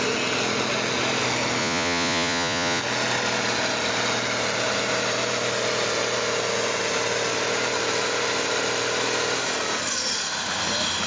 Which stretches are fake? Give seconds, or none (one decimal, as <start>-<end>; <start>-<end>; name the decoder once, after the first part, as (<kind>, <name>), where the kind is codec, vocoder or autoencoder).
1.6-2.8 (vocoder, Vocos)